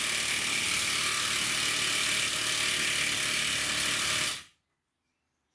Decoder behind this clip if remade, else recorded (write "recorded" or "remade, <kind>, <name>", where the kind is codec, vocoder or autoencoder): recorded